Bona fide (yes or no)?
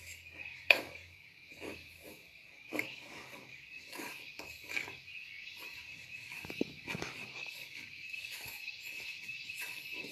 no